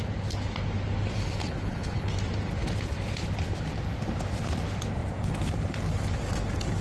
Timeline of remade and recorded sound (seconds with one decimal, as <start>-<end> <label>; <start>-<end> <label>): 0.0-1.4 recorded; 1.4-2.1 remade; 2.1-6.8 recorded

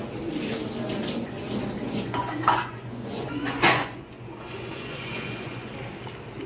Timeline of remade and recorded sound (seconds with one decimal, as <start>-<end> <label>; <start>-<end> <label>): 0.0-1.8 recorded; 1.8-5.7 remade; 5.7-6.5 recorded

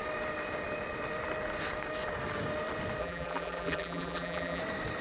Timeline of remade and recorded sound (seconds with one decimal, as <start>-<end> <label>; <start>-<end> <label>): 0.0-3.0 recorded; 3.0-4.6 remade; 4.6-5.0 recorded